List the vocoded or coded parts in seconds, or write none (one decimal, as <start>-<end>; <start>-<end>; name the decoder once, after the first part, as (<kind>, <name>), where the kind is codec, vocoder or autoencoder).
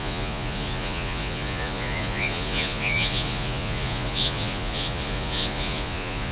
0.0-6.3 (vocoder, Vocos)